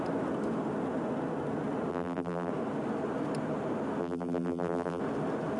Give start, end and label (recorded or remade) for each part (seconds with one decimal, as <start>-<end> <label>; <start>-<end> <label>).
0.0-1.9 recorded; 1.9-2.5 remade; 2.5-4.0 recorded; 4.0-5.0 remade; 5.0-5.6 recorded